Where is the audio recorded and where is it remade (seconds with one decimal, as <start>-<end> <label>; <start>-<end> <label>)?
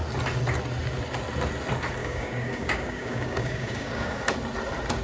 0.0-2.0 recorded; 2.0-4.2 remade; 4.2-5.0 recorded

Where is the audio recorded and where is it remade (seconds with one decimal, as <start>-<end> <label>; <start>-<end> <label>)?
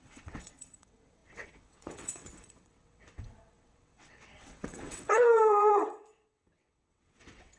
0.0-7.6 remade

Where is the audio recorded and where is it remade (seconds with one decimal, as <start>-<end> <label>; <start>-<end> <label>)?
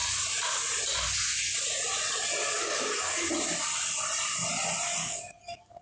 0.0-2.4 recorded; 2.4-3.3 remade; 3.3-5.0 recorded; 5.0-5.8 remade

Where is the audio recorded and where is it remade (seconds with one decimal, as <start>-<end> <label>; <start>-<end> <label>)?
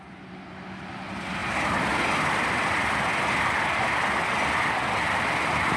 0.0-5.8 recorded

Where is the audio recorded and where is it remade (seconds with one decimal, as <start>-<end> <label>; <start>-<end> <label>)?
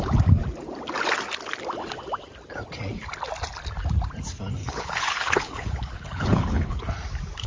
0.0-4.6 recorded; 4.6-6.8 remade; 6.8-7.5 recorded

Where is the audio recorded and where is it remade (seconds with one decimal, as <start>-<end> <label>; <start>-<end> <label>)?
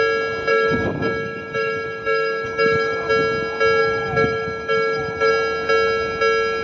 0.0-0.5 recorded; 0.5-3.1 remade; 3.1-3.8 recorded; 3.8-5.3 remade; 5.3-6.6 recorded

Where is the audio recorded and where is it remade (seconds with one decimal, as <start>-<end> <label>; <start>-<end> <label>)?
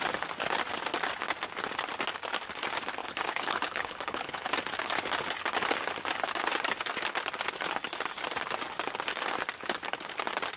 0.0-3.0 recorded; 3.0-4.5 remade; 4.5-10.6 recorded